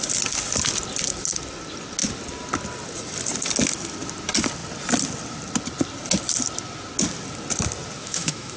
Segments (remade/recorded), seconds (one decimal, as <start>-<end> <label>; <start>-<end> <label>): 0.0-8.0 recorded; 8.0-8.6 remade